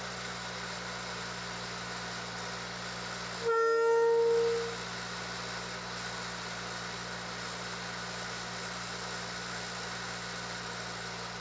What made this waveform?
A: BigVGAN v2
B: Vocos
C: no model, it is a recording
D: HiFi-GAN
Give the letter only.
C